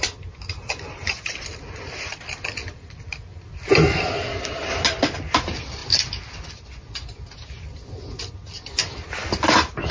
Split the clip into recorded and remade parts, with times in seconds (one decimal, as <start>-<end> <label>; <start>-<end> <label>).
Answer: 0.0-9.9 recorded